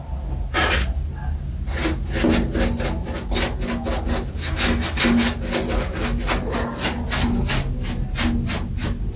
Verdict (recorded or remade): recorded